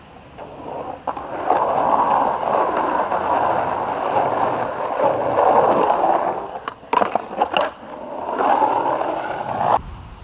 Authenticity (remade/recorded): recorded